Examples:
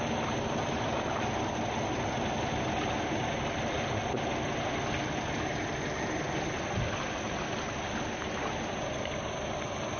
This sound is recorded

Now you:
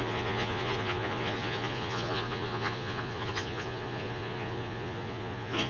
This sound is remade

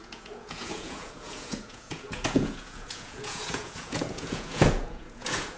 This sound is remade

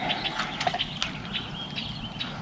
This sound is recorded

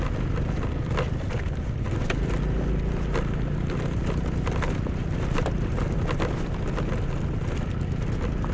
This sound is recorded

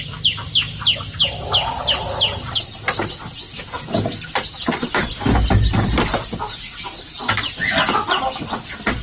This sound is recorded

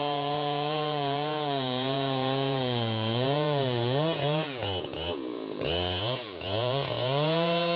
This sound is remade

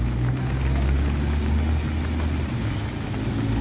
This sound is recorded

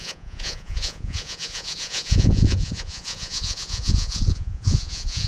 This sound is remade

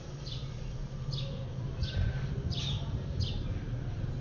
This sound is recorded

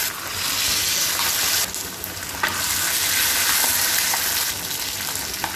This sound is recorded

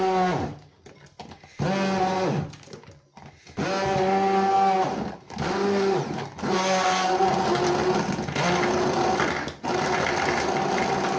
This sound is recorded